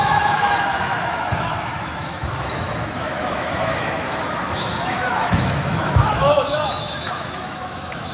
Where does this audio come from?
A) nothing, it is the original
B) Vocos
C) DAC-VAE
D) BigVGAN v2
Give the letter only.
C